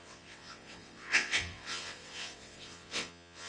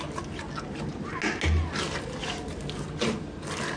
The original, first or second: second